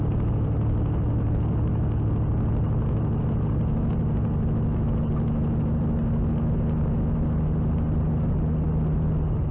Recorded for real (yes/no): yes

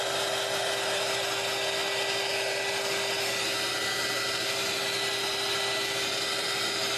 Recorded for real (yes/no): yes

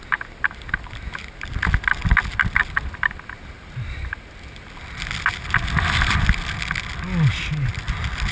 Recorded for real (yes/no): yes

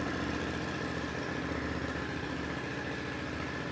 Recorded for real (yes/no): no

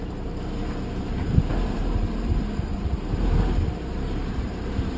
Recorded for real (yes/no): no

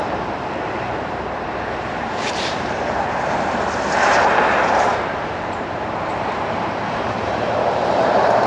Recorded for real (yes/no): no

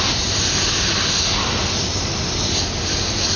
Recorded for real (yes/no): yes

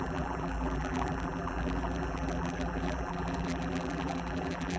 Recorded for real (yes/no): no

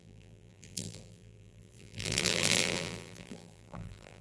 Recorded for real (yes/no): no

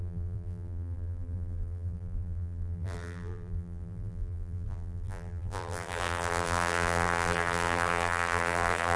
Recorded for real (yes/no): no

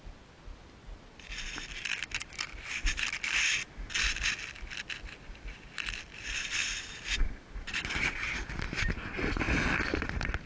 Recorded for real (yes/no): yes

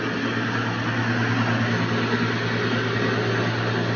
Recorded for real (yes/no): yes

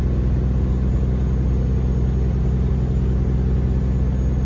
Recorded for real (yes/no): yes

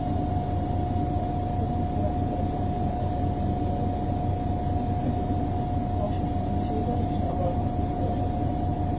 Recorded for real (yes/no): yes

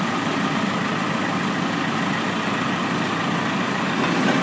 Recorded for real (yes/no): yes